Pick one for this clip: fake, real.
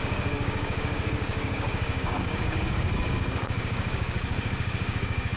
fake